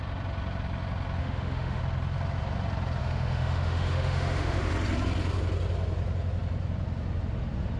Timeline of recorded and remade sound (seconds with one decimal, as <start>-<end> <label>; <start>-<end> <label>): 0.0-1.2 recorded; 1.2-1.8 remade; 1.8-3.0 recorded; 3.0-4.7 remade; 4.7-7.8 recorded